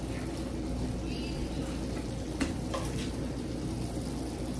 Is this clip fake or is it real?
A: real